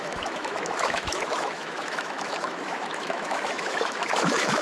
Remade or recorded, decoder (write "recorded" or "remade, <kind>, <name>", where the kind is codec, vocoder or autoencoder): remade, autoencoder, DAC-VAE